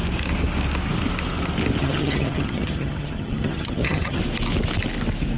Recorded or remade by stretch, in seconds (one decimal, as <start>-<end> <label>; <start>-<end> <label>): 0.0-1.8 recorded; 1.8-4.2 remade; 4.2-5.4 recorded